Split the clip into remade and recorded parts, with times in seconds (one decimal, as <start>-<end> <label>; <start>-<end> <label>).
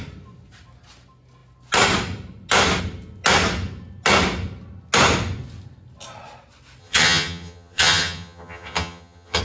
0.0-6.8 recorded; 6.8-9.4 remade